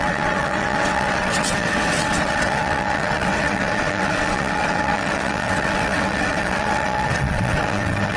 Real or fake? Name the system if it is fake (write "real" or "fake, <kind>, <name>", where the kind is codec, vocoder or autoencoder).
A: fake, vocoder, WaveNeXt